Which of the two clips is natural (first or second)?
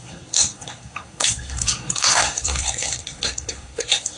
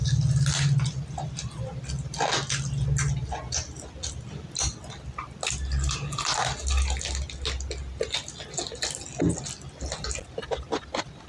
second